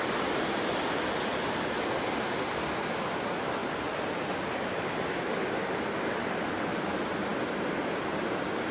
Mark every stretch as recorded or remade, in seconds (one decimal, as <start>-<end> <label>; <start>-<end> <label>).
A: 0.0-8.7 recorded